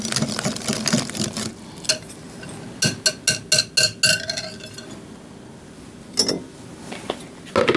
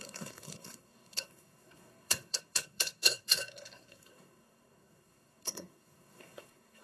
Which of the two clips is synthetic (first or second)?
second